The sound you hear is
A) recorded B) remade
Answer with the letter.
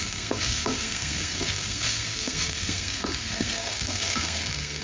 B